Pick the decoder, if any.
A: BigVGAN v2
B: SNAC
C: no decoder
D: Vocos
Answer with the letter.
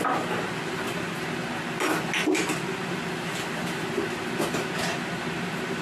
C